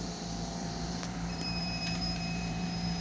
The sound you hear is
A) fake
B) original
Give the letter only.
A